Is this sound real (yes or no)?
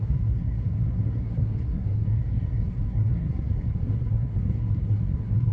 no